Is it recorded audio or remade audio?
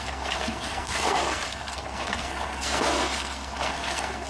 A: remade